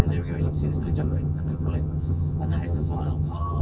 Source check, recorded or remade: remade